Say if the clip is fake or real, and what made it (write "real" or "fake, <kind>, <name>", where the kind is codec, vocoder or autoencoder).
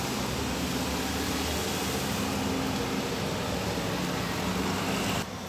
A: real